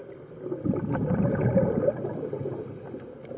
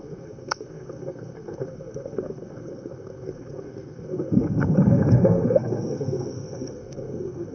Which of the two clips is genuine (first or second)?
first